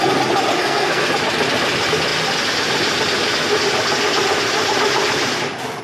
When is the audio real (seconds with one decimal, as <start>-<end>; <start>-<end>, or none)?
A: 0.0-0.5; 1.1-5.8